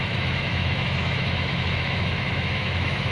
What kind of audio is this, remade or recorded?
remade